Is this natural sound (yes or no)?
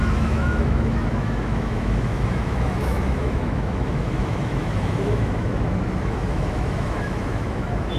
no